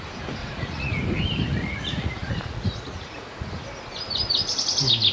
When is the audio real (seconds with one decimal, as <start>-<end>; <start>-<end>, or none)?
0.0-0.4; 1.0-1.6; 3.5-5.1